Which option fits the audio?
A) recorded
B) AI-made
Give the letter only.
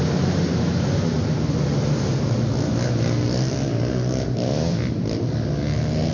A